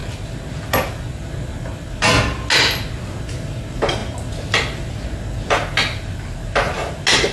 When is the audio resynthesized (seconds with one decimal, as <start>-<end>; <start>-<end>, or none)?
none